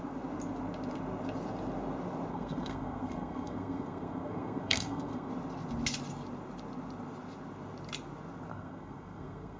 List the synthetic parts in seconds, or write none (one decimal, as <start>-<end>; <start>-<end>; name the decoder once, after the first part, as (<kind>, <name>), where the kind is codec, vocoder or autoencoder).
2.3-5.3 (codec, SNAC); 8.5-9.6